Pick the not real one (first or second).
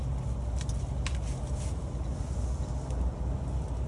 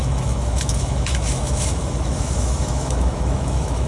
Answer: second